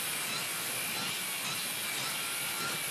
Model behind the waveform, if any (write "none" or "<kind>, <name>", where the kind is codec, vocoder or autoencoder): none